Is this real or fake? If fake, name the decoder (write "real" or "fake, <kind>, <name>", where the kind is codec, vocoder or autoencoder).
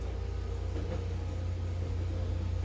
real